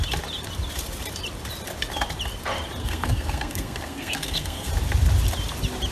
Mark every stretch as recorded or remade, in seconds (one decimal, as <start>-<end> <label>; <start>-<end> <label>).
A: 0.0-2.8 recorded; 2.8-4.7 remade; 4.7-5.9 recorded